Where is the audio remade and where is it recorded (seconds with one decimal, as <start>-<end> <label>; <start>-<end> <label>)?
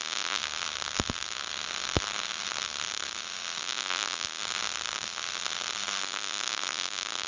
0.0-0.4 recorded; 0.4-3.6 remade; 3.6-4.4 recorded; 4.4-6.0 remade; 6.0-7.3 recorded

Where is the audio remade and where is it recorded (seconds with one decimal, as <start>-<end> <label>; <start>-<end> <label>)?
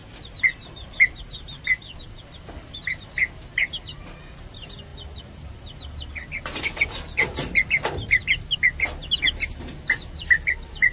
0.0-1.9 remade; 1.9-4.9 recorded; 4.9-6.1 remade; 6.1-10.9 recorded